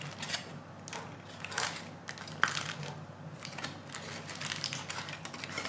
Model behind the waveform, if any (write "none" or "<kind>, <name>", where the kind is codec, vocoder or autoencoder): none